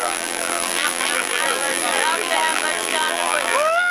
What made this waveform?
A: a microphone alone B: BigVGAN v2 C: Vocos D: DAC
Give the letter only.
B